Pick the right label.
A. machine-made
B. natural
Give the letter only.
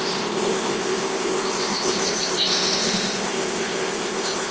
A